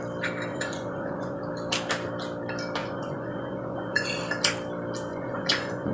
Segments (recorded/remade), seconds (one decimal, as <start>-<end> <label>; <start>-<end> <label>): 0.0-0.5 recorded; 0.5-1.4 remade; 1.4-2.8 recorded; 2.8-4.2 remade; 4.2-5.1 recorded; 5.1-5.9 remade